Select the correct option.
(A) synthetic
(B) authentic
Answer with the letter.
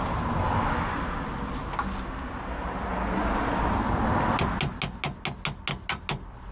B